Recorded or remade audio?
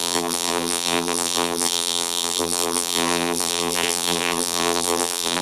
remade